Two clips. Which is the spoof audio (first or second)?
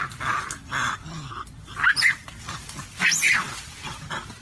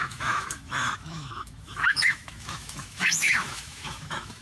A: second